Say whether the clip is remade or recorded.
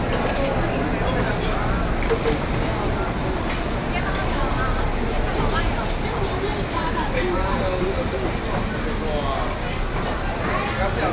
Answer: recorded